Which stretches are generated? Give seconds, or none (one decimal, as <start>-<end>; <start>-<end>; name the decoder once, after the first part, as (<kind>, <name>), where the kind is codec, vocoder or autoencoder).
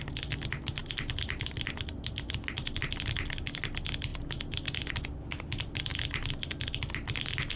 none